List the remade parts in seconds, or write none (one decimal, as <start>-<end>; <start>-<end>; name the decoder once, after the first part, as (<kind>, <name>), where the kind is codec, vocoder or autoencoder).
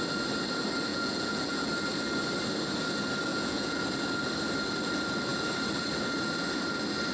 0.9-1.7 (vocoder, Vocos); 3.3-3.9